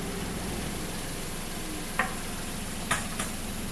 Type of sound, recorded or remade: recorded